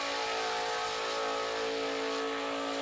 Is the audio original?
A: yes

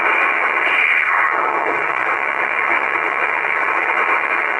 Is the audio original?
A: no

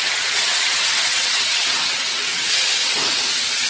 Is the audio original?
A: no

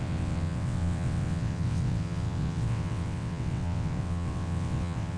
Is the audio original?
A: no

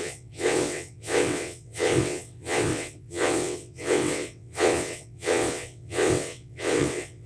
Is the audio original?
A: no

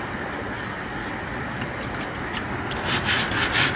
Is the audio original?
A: yes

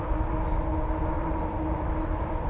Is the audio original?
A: yes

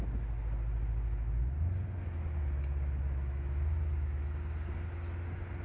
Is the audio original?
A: yes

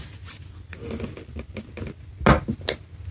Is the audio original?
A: yes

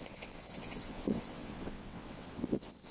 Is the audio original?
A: no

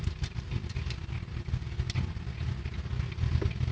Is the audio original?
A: yes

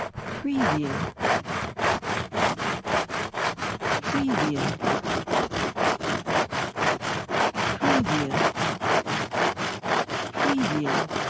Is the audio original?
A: yes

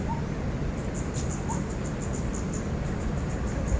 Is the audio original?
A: yes